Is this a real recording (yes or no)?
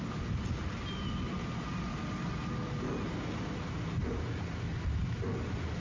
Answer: yes